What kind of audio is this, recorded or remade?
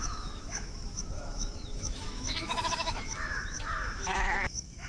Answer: remade